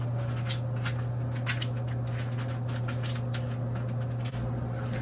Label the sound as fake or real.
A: real